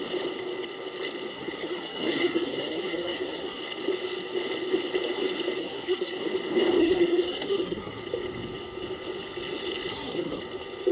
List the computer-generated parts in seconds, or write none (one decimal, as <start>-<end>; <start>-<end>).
1.3-3.6; 5.6-6.2; 6.8-8.0; 9.9-10.4